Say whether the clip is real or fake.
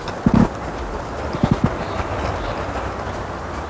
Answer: real